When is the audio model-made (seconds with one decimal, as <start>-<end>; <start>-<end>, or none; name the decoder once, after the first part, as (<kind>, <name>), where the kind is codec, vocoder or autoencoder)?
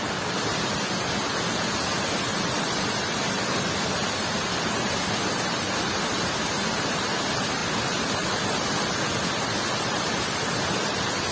none